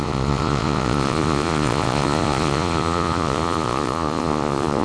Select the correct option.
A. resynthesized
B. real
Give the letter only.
A